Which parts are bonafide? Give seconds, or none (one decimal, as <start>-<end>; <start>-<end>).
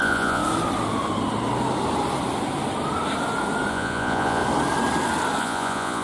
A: 0.4-3.7; 4.4-5.4